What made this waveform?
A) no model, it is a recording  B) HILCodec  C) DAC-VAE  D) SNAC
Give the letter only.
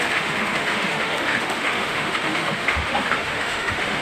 C